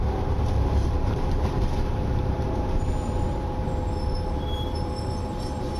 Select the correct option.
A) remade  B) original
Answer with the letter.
A